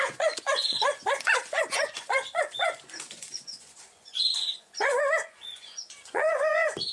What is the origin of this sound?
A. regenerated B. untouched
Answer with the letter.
A